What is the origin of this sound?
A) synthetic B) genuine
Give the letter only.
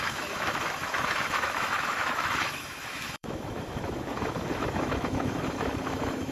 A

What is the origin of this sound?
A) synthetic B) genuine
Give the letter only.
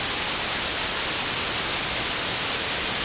B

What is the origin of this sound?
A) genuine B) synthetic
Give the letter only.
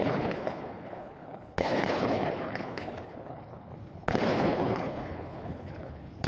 B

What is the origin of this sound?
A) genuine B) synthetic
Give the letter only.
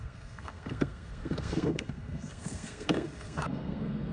B